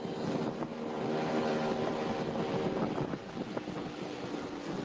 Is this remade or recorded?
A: recorded